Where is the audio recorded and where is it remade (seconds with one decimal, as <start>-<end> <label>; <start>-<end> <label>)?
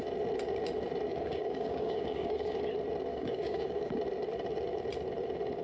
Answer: 0.0-1.1 recorded; 1.1-2.6 remade; 2.6-3.1 recorded; 3.1-4.0 remade; 4.0-5.6 recorded